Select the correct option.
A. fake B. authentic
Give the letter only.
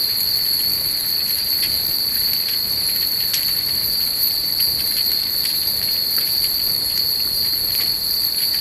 A